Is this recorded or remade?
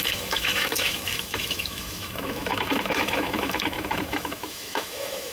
remade